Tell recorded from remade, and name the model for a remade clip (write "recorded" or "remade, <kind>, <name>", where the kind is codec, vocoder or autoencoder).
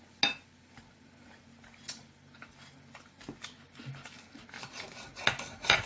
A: recorded